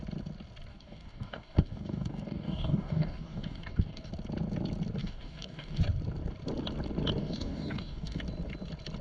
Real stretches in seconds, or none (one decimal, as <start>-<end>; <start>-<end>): 0.0-0.7; 4.1-5.0; 5.8-7.2; 8.2-9.0